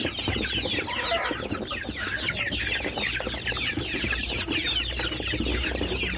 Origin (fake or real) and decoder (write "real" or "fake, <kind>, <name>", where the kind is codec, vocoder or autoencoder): real